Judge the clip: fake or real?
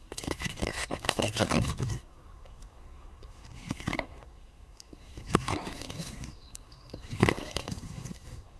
fake